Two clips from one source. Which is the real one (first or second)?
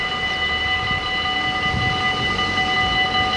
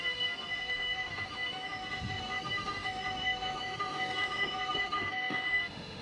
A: first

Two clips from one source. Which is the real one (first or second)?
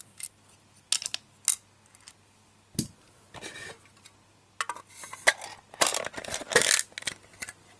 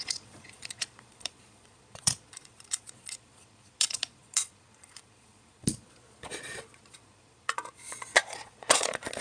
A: first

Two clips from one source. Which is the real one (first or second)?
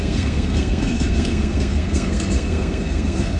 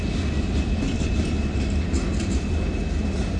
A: second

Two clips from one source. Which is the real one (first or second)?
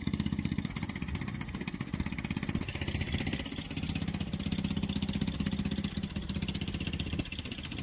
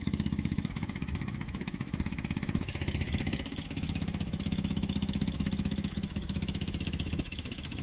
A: first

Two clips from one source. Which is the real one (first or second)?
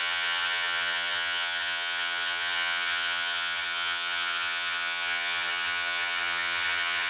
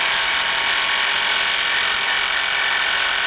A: second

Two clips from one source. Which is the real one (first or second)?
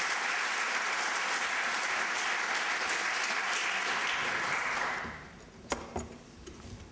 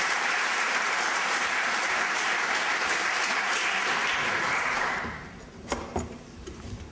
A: first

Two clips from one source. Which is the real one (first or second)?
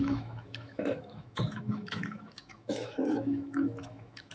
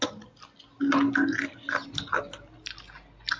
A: second